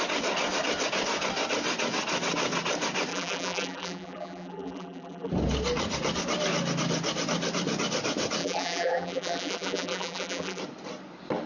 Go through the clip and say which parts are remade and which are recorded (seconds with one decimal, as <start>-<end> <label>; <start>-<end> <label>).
0.0-3.1 recorded; 3.1-5.3 remade; 5.3-8.4 recorded; 8.4-10.6 remade; 10.6-11.5 recorded